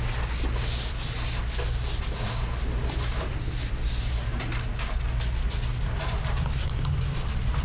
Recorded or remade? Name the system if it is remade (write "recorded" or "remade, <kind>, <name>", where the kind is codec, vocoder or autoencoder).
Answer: recorded